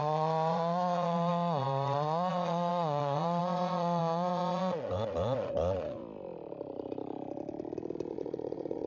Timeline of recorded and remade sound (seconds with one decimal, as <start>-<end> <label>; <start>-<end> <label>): 0.0-6.0 remade; 6.0-8.1 recorded; 8.1-8.9 remade